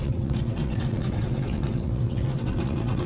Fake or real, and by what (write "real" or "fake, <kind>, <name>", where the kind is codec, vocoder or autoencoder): fake, vocoder, WaveNeXt